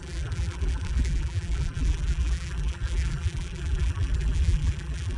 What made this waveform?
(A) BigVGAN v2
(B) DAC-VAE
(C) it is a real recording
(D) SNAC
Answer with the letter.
A